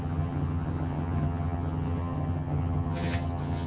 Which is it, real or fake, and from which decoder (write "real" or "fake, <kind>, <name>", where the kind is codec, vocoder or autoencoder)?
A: fake, vocoder, HiFi-GAN